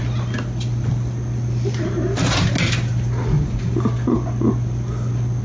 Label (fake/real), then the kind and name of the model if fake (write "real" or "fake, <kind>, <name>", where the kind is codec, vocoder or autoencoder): real